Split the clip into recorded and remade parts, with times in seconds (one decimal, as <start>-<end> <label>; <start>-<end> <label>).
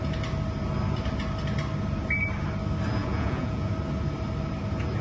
0.0-3.0 recorded; 3.0-3.7 remade; 3.7-5.0 recorded